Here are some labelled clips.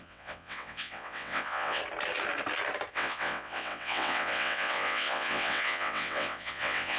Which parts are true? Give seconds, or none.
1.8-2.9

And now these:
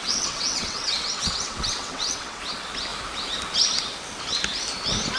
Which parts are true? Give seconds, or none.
2.4-5.2

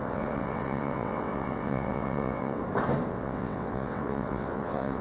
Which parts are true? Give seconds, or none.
2.6-3.1

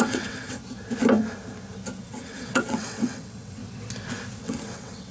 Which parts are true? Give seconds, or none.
0.6-2.0; 3.6-4.4

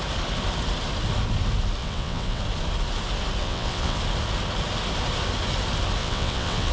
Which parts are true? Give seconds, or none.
0.0-1.8; 2.4-3.4; 4.0-6.0

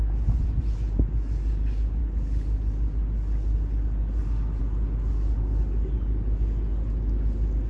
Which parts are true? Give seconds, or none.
0.0-7.7